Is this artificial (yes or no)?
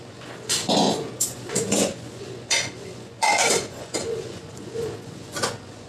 yes